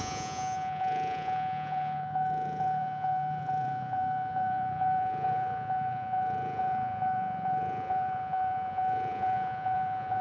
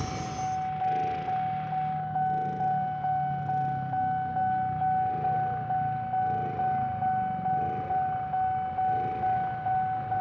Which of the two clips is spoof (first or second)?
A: first